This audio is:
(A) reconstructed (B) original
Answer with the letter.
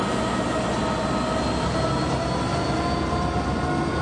B